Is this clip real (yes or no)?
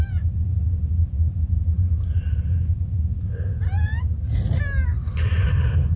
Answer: yes